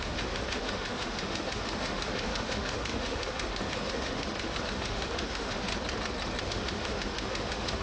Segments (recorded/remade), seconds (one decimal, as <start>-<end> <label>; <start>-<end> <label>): 0.0-5.7 remade; 5.7-6.5 recorded; 6.5-7.8 remade

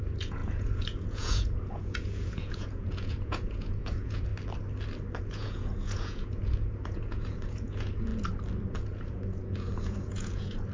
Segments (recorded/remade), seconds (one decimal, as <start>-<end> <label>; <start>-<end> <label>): 0.0-4.3 remade; 4.3-5.2 recorded; 5.2-8.1 remade; 8.1-8.7 recorded; 8.7-10.7 remade

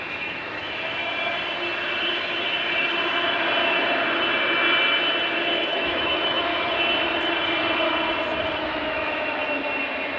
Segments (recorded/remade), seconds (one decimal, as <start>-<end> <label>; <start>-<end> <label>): 0.0-1.0 remade; 1.0-5.6 recorded; 5.6-6.5 remade; 6.5-8.6 recorded; 8.6-9.4 remade; 9.4-10.2 recorded

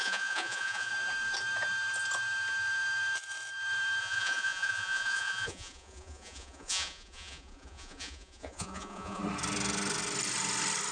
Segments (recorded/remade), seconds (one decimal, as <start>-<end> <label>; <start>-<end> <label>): 0.0-0.9 remade; 0.9-4.0 recorded; 4.0-9.2 remade; 9.2-10.9 recorded

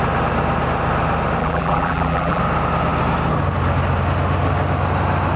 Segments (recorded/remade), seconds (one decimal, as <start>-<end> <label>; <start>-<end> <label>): 0.0-1.4 recorded; 1.4-2.4 remade; 2.4-5.4 recorded

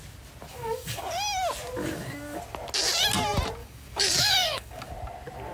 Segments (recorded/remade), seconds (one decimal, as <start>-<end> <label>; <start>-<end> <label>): 0.0-0.5 recorded; 0.5-1.0 remade; 1.0-1.8 recorded; 1.8-2.4 remade; 2.4-3.6 recorded; 3.6-4.9 remade; 4.9-5.5 recorded